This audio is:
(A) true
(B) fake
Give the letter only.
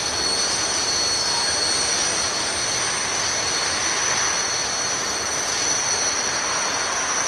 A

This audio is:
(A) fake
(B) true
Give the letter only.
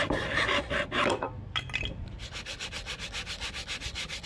B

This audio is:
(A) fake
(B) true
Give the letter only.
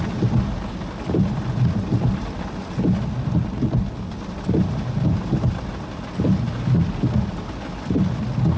B